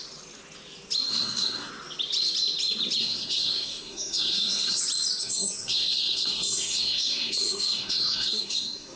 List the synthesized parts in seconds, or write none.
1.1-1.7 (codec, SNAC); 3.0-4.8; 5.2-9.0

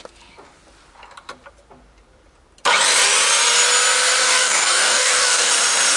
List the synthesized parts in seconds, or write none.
4.2-5.5 (codec, DAC)

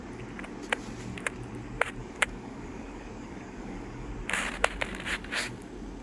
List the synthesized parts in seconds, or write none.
2.0-4.1 (codec, DAC)

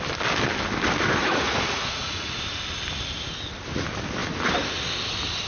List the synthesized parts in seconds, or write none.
1.2-2.4 (vocoder, Vocos)

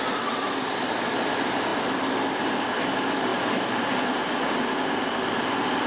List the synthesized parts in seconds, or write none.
none

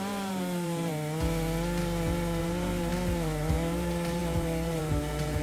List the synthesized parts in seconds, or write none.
0.0-0.9 (vocoder, BigVGAN v2); 2.4-2.9; 3.5-5.4

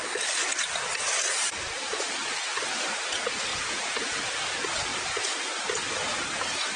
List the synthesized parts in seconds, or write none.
3.5-4.3 (vocoder, Vocos)

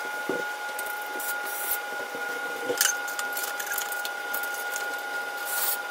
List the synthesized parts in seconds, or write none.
none